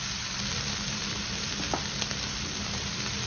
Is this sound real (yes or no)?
no